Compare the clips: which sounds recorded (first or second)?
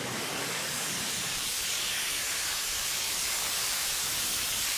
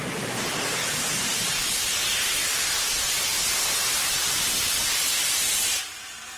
second